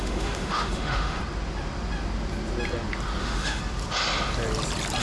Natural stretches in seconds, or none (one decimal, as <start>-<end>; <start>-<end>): 1.2-3.2; 3.6-5.0